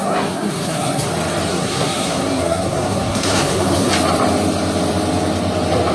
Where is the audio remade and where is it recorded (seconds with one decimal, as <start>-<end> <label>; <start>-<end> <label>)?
0.0-1.1 remade; 1.1-1.5 recorded; 1.5-3.9 remade; 3.9-5.9 recorded